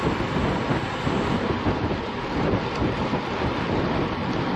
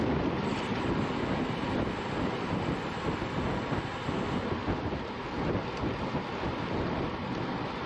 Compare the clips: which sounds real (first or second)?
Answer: second